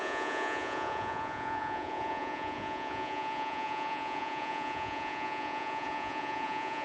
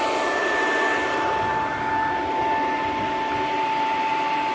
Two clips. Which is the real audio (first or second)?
second